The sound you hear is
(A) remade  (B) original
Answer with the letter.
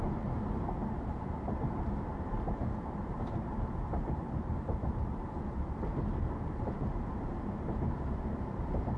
A